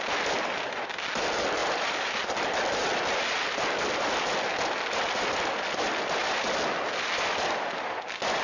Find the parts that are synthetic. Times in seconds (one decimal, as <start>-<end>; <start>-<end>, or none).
none